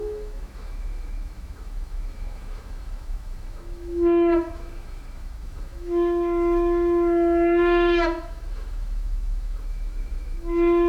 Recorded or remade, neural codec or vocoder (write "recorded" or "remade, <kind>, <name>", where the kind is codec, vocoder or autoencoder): remade, autoencoder, DAC-VAE